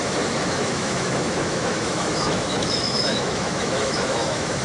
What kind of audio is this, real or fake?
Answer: fake